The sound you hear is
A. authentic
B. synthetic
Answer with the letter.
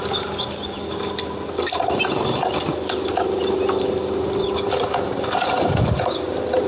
A